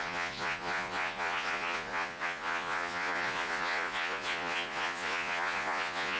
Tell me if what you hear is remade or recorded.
remade